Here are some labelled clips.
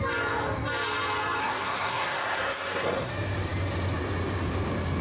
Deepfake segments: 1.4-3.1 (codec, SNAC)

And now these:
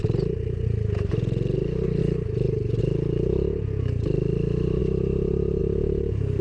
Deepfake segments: none

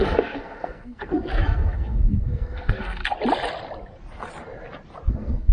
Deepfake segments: 0.0-3.0 (codec, SNAC); 5.1-5.5